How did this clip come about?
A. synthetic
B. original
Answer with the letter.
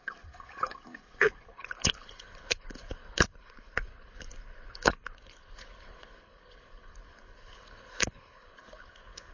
A